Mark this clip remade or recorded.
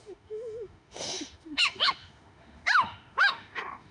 remade